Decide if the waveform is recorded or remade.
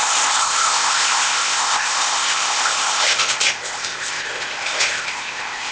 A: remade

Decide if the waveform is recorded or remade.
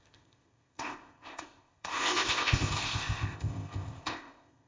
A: remade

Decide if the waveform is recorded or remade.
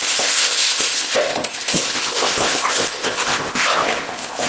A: remade